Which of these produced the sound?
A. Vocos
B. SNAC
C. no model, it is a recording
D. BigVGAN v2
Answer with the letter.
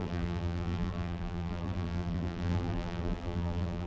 D